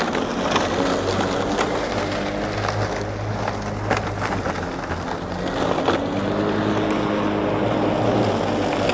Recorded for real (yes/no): yes